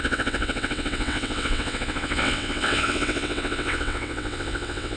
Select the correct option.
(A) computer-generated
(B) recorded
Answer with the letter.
A